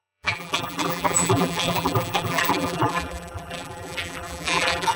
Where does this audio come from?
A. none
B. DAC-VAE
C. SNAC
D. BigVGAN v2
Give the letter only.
D